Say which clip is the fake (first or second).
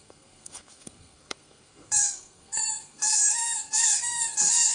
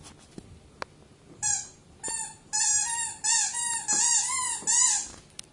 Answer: first